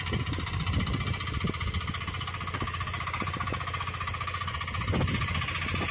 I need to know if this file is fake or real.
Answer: real